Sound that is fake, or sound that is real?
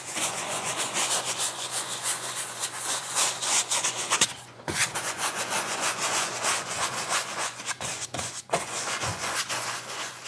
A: fake